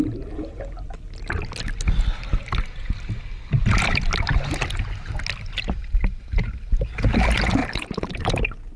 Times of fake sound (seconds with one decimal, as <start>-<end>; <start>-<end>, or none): 7.6-8.2